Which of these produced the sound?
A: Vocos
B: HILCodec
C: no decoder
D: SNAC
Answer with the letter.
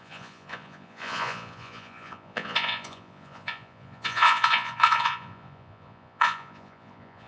A